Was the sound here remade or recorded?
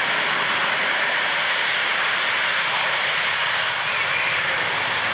remade